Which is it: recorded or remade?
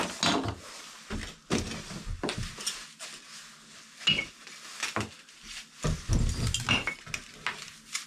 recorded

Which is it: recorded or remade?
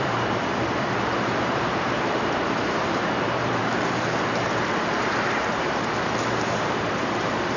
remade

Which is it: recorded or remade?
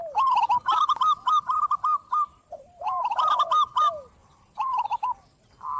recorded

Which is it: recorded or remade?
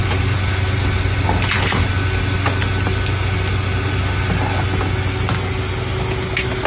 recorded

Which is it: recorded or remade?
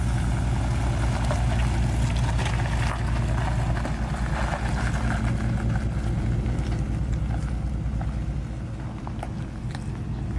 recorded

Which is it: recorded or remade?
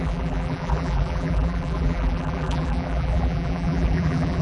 remade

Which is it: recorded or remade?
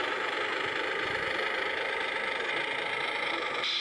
recorded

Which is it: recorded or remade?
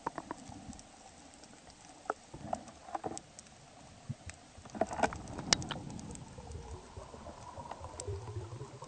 recorded